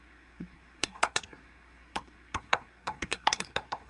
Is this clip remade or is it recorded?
remade